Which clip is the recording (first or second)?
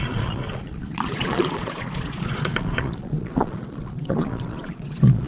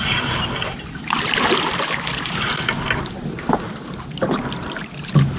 second